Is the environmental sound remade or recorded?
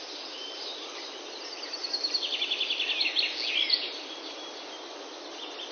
recorded